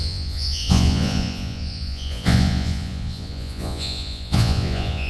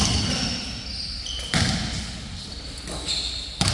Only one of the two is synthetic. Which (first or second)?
first